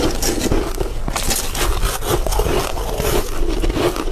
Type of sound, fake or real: real